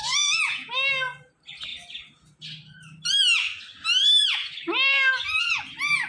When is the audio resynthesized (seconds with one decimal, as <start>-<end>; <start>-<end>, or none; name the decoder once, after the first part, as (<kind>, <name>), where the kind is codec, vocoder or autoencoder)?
0.0-0.7 (vocoder, Vocos)